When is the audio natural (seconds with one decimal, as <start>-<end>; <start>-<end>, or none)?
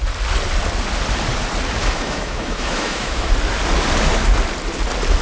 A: 0.0-1.8; 3.3-5.2